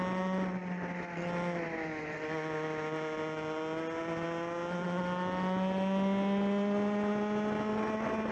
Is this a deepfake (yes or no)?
no